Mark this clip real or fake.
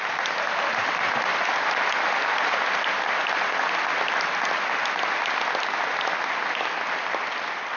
real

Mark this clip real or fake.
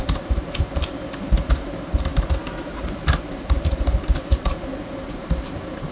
fake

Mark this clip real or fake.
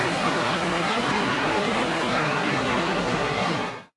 fake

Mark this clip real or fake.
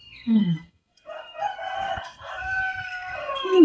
fake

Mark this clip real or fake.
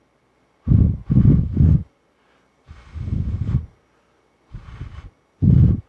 real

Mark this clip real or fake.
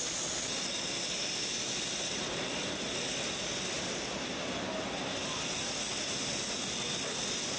real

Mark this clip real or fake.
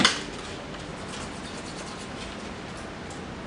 real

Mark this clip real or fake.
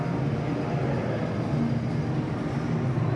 real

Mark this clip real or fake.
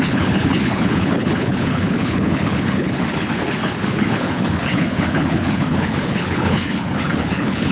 fake